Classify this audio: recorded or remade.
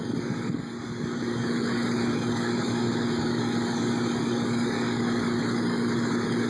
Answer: remade